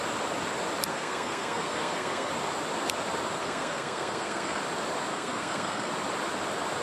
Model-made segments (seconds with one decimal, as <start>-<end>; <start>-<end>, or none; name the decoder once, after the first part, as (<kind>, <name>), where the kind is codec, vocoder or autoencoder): 0.9-2.3 (codec, SNAC); 3.4-4.6; 5.1-5.9